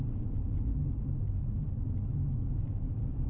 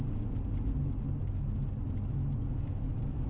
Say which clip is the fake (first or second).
first